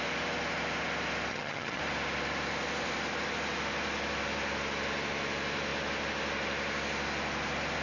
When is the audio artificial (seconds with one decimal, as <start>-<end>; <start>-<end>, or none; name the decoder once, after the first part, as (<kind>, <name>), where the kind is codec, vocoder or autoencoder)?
1.3-1.8 (vocoder, HiFi-GAN)